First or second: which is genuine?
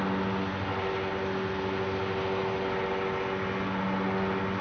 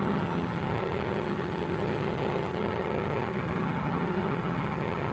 first